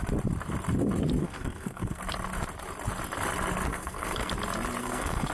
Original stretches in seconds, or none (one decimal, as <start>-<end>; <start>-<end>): 0.0-1.2; 2.0-3.7; 4.3-4.8

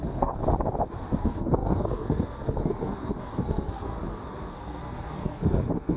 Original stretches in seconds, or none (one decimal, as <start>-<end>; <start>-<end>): 0.4-1.2

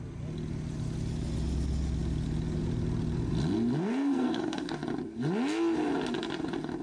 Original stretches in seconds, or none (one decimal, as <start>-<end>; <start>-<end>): 0.0-3.7; 4.7-6.8

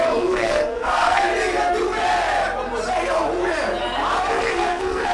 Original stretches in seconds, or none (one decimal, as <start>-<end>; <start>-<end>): 1.3-4.3

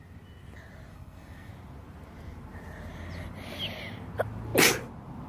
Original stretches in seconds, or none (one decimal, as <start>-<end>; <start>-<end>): 0.0-0.9; 1.5-5.3

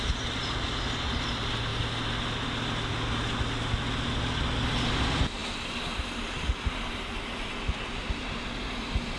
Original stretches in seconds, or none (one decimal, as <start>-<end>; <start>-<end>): 0.0-9.2

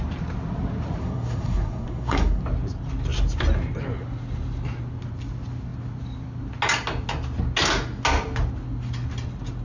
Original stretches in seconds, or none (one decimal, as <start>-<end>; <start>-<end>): 0.0-1.0; 2.4-9.6